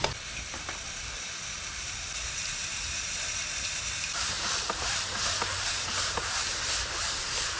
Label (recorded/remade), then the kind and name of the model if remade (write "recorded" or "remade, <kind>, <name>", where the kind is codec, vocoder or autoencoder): recorded